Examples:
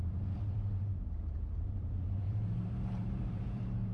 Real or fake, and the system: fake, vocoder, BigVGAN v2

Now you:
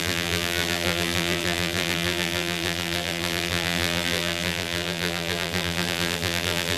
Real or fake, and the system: fake, vocoder, BigVGAN v2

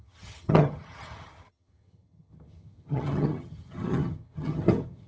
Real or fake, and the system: fake, vocoder, HiFi-GAN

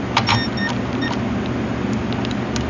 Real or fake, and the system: real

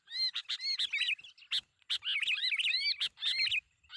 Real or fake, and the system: real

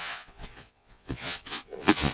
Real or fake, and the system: fake, vocoder, Vocos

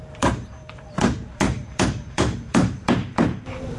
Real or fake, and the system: fake, vocoder, BigVGAN v2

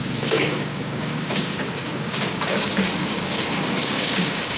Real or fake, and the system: fake, codec, DAC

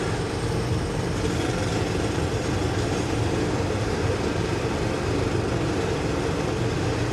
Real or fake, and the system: fake, vocoder, BigVGAN v2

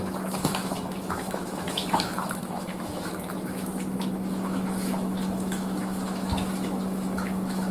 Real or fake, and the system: fake, autoencoder, DAC-VAE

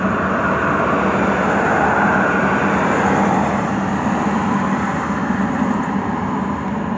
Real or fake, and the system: real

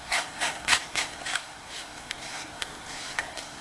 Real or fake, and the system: fake, codec, SNAC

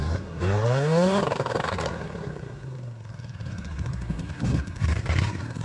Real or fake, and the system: fake, codec, SNAC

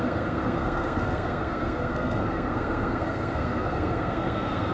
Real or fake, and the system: fake, codec, SNAC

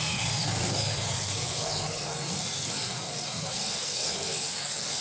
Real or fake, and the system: fake, codec, SNAC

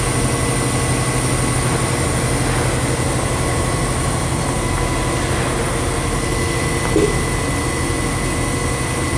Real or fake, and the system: real